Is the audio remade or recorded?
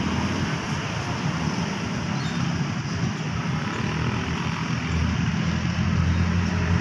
recorded